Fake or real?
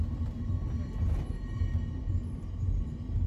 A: real